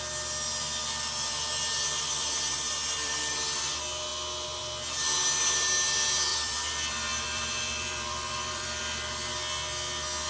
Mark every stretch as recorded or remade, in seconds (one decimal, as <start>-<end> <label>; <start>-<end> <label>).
0.0-0.8 recorded; 0.8-3.2 remade; 3.2-6.3 recorded; 6.3-8.8 remade; 8.8-10.3 recorded